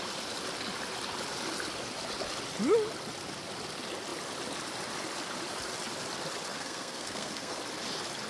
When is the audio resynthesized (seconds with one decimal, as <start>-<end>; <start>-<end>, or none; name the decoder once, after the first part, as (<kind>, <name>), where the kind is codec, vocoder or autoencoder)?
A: 6.5-7.6 (codec, SNAC)